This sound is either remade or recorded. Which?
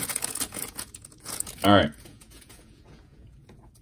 remade